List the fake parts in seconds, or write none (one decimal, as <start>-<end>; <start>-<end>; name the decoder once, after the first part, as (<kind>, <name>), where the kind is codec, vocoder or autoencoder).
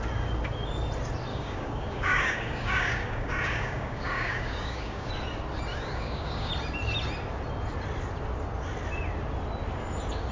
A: 1.3-5.1 (codec, DAC); 5.7-6.5